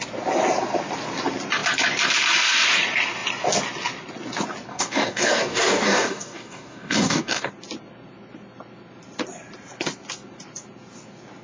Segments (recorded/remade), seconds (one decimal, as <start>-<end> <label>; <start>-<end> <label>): 0.0-4.7 recorded; 4.7-7.5 remade; 7.5-11.4 recorded